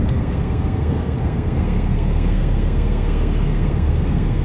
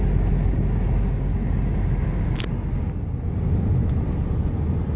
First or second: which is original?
second